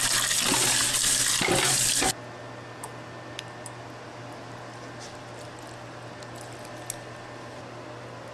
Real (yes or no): yes